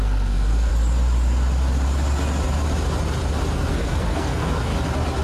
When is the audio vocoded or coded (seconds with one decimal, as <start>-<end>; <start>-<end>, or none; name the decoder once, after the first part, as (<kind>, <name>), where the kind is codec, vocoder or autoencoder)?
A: 0.0-0.7 (codec, SNAC); 3.7-4.7